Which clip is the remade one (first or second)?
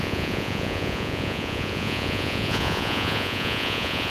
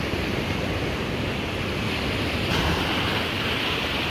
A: first